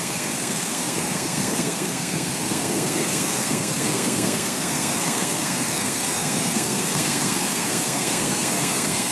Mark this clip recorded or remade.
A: remade